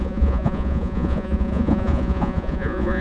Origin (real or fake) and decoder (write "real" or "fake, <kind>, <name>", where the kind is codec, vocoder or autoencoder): fake, vocoder, Vocos